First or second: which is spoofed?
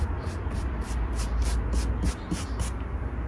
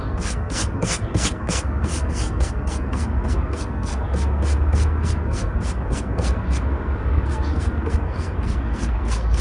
second